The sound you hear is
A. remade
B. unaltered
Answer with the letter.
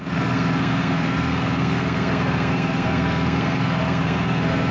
A